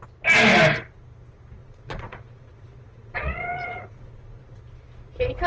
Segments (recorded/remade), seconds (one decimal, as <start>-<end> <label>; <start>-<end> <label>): 0.0-1.6 recorded; 1.6-4.6 remade; 4.6-5.5 recorded